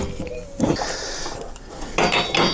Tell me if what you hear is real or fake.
real